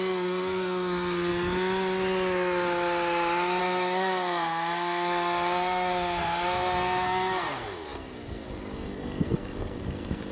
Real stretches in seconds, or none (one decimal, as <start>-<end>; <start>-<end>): 1.3-3.6